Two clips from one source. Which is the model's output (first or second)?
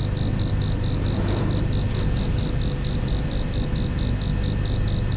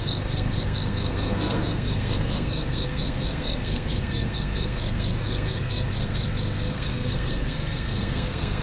second